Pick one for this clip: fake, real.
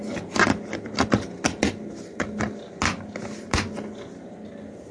real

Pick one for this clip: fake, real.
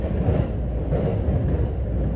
fake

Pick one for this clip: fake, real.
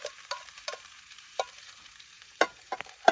fake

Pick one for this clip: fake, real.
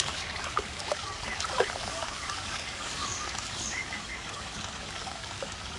fake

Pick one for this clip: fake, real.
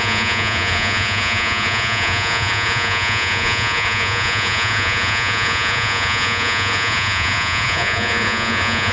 fake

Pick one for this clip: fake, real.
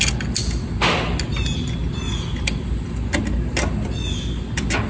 real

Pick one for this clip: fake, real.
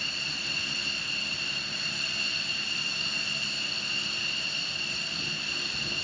real